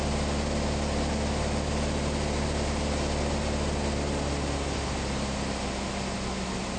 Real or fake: real